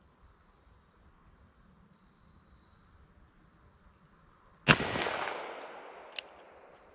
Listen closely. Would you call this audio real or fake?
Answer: real